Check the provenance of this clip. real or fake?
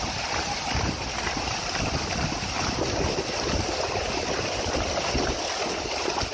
real